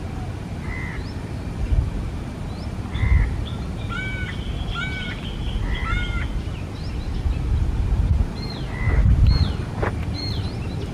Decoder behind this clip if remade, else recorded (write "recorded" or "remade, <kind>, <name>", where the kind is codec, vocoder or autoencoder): recorded